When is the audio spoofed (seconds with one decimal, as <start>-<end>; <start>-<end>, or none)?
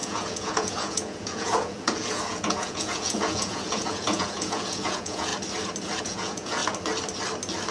0.0-5.3; 6.0-6.6